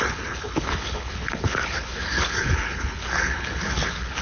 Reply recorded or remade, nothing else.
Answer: remade